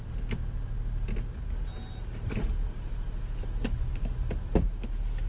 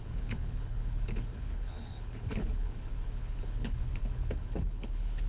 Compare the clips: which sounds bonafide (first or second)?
first